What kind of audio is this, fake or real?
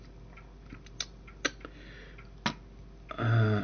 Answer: real